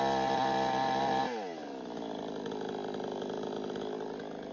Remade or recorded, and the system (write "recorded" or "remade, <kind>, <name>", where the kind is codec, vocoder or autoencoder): recorded